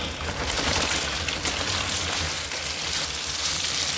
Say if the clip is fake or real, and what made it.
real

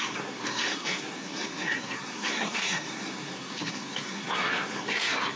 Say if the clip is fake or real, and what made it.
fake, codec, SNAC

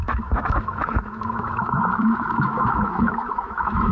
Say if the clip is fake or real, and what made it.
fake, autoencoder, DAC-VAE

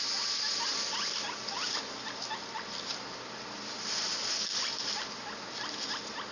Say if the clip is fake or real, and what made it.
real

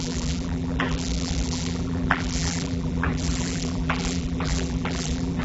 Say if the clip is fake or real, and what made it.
fake, vocoder, BigVGAN v2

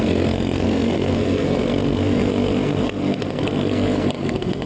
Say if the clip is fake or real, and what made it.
fake, codec, SNAC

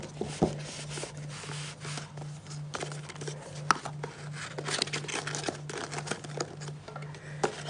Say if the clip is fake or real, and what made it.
real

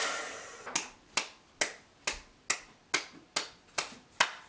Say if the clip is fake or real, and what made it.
real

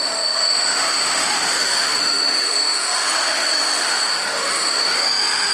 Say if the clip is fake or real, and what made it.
fake, autoencoder, DAC-VAE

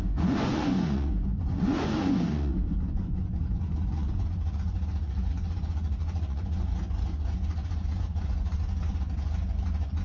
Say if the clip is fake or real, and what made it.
fake, vocoder, Vocos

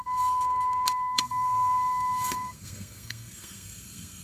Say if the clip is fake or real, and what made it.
fake, codec, SNAC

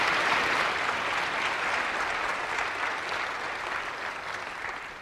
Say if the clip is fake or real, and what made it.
real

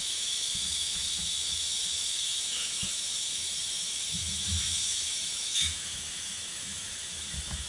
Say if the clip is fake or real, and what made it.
fake, autoencoder, DAC-VAE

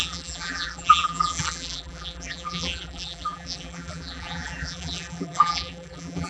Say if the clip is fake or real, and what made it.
fake, vocoder, BigVGAN v2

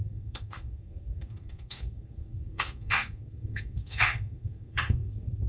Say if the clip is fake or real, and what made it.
fake, codec, SNAC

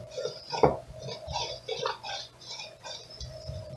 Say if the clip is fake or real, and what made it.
fake, vocoder, Vocos